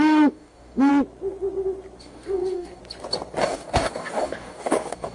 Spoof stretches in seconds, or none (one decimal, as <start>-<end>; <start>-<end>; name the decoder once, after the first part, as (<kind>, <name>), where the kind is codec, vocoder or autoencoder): 0.0-0.9 (codec, DAC); 2.0-2.8; 3.4-5.1